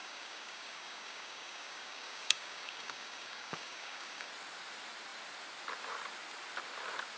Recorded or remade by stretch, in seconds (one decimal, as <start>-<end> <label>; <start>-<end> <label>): 0.0-4.3 remade; 4.3-7.2 recorded